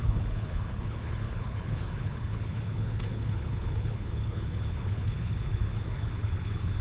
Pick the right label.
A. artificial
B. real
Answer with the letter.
A